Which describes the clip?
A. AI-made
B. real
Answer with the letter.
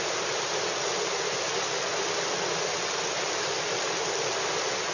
B